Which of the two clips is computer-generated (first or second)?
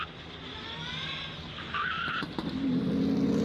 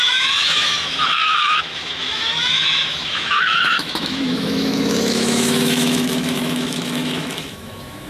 second